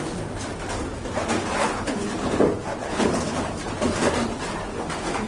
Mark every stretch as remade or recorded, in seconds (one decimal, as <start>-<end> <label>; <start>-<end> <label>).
0.0-1.6 recorded; 1.6-2.3 remade; 2.3-2.8 recorded; 2.8-3.4 remade; 3.4-5.3 recorded